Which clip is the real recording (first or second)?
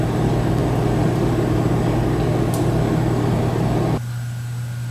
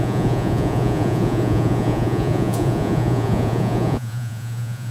first